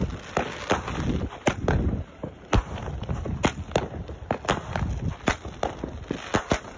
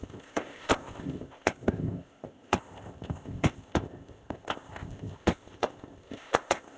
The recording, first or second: first